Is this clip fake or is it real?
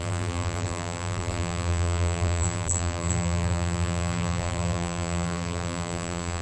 fake